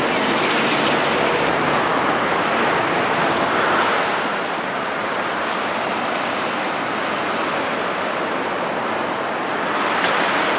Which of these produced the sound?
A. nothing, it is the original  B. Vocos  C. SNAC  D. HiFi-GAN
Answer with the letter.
A